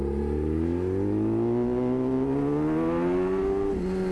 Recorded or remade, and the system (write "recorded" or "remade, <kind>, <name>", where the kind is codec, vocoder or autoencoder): recorded